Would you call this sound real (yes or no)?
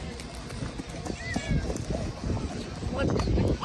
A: yes